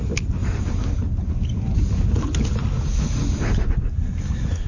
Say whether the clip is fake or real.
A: real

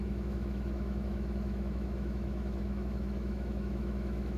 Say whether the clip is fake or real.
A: fake